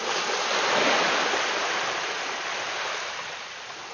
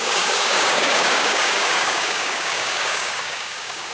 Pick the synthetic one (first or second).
second